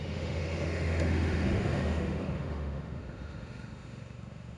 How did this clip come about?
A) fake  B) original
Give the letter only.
A